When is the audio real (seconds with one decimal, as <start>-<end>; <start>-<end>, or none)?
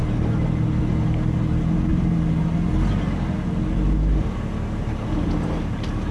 0.0-6.1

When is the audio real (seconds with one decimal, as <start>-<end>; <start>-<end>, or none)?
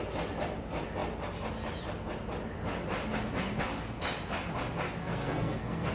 0.0-5.0